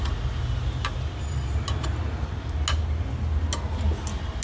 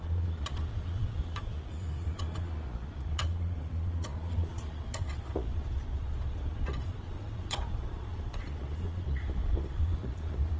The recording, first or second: first